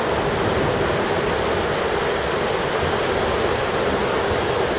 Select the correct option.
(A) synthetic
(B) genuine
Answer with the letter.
B